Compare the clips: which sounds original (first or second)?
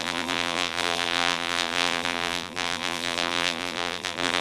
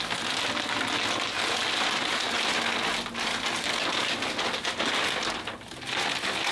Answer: second